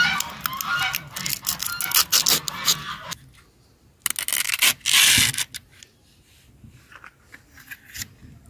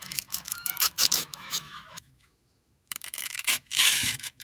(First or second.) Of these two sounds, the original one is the first